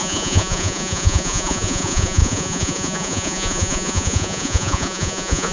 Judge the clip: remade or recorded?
remade